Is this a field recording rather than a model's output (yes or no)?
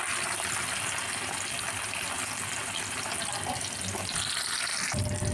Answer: yes